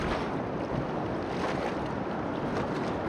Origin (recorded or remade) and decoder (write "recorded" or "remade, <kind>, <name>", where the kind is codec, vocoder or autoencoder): recorded